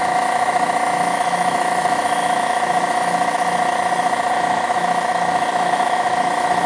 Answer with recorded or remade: remade